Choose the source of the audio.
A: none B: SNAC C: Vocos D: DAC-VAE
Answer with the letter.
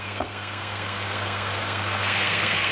B